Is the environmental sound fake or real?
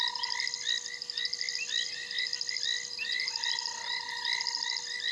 real